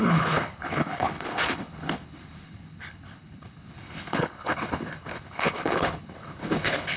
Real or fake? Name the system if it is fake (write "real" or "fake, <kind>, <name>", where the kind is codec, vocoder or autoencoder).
fake, codec, HILCodec